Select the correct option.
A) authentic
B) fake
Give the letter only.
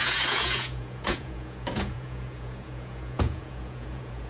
B